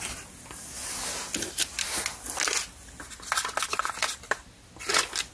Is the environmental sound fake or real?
real